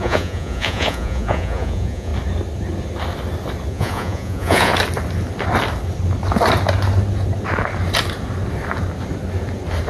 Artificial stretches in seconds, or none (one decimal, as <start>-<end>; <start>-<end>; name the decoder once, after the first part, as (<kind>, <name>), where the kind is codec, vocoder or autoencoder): 0.0-2.1 (vocoder, Vocos); 3.7-4.7